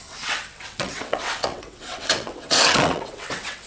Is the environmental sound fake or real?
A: fake